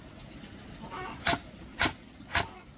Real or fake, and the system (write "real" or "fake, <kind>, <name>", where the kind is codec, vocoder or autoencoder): real